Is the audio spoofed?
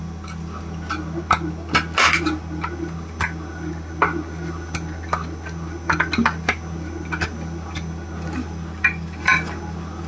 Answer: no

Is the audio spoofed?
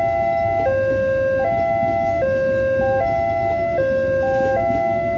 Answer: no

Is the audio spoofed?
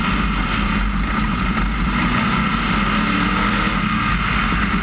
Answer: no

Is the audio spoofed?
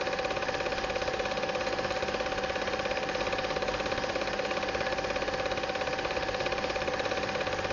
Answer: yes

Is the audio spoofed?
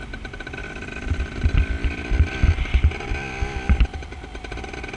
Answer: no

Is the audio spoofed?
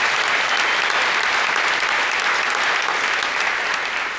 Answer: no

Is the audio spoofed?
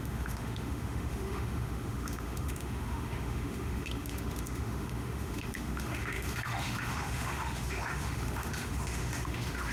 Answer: yes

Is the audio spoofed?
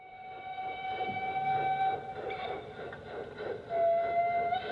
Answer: no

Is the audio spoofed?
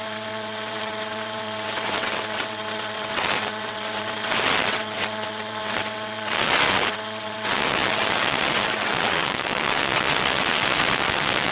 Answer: yes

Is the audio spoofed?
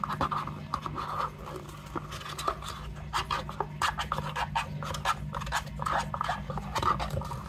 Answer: no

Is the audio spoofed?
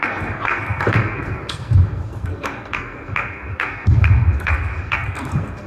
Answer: yes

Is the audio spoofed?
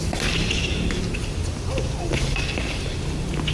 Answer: no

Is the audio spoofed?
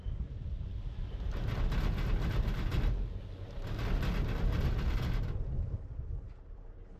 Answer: no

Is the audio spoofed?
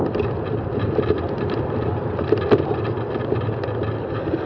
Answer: no